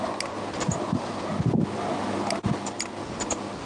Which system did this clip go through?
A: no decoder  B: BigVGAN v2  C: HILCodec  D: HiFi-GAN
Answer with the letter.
A